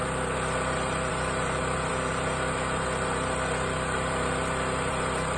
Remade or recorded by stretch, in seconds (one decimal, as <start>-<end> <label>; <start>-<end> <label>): 0.0-5.4 recorded